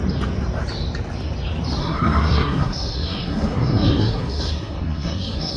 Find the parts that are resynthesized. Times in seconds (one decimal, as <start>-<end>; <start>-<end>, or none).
1.8-5.6